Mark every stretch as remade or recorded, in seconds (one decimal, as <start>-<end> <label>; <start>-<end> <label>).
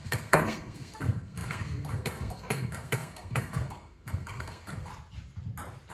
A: 0.0-4.9 remade; 4.9-5.9 recorded